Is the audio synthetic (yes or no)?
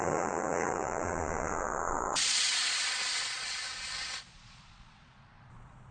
yes